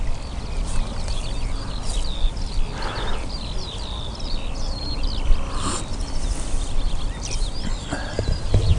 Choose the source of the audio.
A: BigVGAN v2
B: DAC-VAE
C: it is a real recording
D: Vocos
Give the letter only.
C